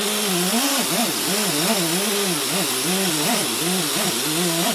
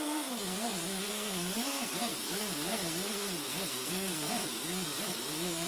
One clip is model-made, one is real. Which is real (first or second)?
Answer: first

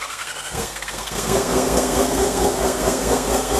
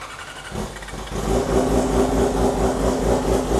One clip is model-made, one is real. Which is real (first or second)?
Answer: second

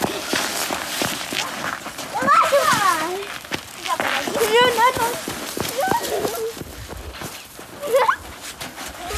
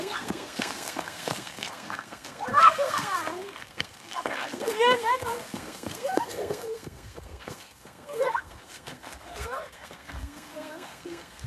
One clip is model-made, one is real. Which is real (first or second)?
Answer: first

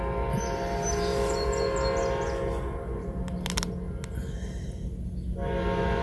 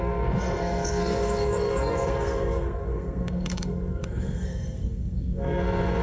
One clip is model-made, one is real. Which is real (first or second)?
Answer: first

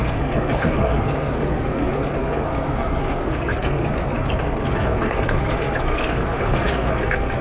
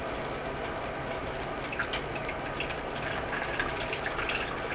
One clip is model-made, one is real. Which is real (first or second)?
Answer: second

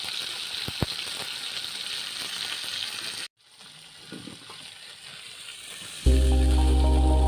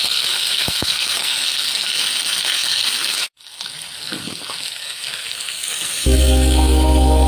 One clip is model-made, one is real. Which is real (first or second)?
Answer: first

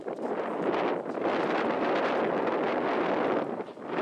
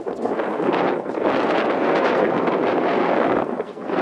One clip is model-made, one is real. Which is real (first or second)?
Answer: first